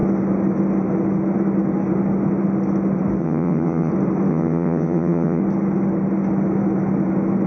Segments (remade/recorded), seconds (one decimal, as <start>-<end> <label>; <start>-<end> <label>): 0.0-3.2 recorded; 3.2-3.9 remade; 3.9-4.3 recorded; 4.3-5.4 remade; 5.4-7.5 recorded